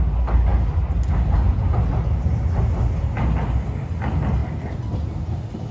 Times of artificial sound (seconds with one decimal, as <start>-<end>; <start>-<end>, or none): none